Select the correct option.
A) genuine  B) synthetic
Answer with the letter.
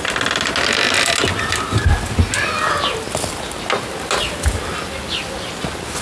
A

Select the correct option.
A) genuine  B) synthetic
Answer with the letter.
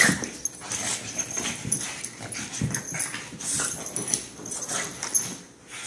A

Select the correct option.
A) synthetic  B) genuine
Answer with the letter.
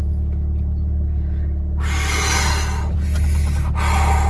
B